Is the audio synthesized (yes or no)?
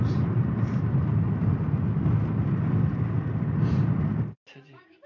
no